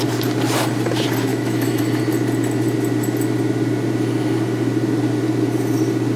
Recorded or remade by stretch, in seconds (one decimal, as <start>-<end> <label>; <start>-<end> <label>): 0.0-1.3 recorded; 1.3-1.8 remade; 1.8-6.2 recorded

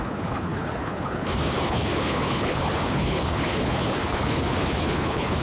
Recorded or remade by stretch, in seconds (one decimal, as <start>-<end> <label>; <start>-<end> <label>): 0.0-5.4 remade

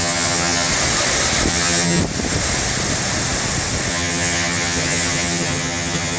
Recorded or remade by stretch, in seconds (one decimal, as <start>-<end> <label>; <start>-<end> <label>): 0.0-0.7 remade; 0.7-1.5 recorded; 1.5-2.0 remade; 2.0-3.9 recorded; 3.9-6.2 remade

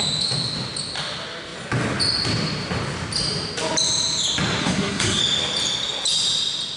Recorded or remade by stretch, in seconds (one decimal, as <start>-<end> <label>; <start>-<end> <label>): 0.0-4.6 recorded; 4.6-5.2 remade; 5.2-6.8 recorded